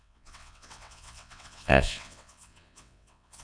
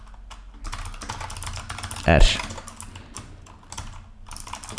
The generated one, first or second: first